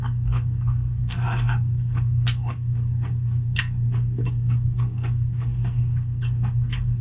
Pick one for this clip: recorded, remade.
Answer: remade